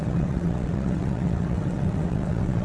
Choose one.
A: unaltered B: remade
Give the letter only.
B